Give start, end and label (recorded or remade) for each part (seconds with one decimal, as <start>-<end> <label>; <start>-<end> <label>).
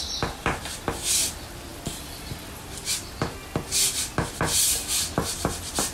0.0-5.9 recorded